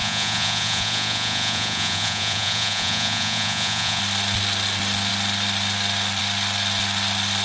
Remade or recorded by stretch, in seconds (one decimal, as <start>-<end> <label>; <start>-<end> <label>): 0.0-4.0 remade; 4.0-7.4 recorded